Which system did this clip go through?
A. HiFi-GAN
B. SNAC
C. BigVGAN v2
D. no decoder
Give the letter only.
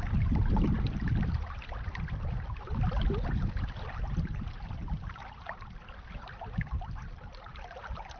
C